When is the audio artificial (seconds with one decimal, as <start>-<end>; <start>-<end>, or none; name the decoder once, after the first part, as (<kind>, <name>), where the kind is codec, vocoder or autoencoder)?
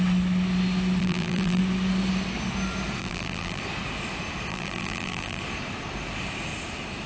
1.0-1.6 (vocoder, BigVGAN v2); 3.0-3.6; 4.5-5.4